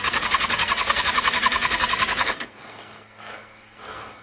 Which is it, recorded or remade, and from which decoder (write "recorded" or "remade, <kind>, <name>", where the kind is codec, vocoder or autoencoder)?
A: remade, codec, SNAC